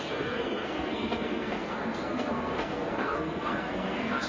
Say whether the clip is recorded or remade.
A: remade